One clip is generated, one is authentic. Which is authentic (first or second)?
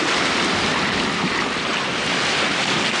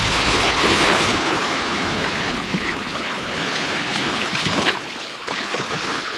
first